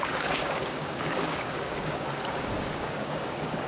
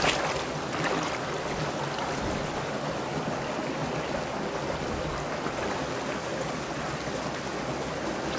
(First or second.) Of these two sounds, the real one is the second